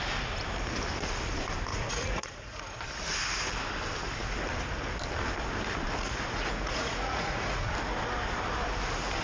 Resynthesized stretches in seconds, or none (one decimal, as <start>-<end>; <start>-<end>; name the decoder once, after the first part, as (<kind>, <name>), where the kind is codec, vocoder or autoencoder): 1.7-2.8 (vocoder, Vocos); 6.0-7.7